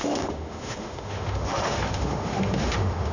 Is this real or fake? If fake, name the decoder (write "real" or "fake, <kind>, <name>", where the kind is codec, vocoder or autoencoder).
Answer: fake, autoencoder, DAC-VAE